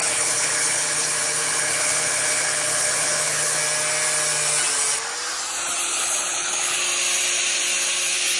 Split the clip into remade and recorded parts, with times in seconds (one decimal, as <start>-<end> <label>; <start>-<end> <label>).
0.0-3.6 remade; 3.6-5.9 recorded; 5.9-6.8 remade; 6.8-8.4 recorded